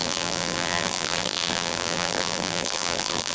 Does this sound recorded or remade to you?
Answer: remade